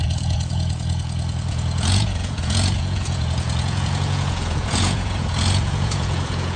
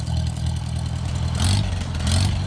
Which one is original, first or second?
second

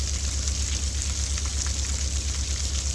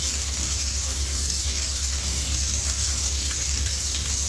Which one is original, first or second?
first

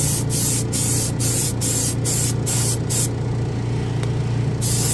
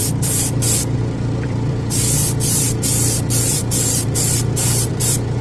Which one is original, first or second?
first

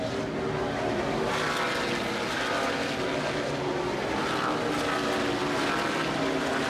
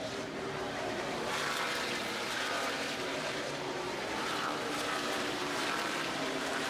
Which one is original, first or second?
first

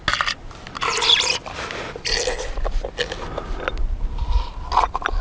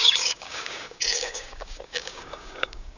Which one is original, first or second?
first